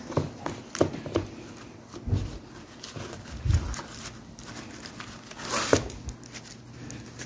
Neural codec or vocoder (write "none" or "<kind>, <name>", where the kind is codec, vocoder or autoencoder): none